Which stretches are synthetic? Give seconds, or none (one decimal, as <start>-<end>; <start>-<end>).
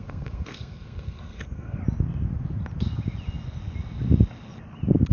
0.0-1.8